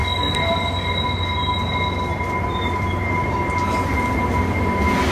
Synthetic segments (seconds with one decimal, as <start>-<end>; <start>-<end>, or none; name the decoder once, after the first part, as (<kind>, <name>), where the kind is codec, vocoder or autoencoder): 2.1-3.4 (vocoder, BigVGAN v2)